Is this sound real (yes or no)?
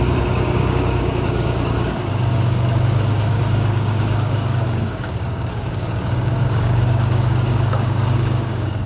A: no